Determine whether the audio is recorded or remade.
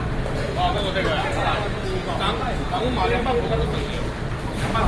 recorded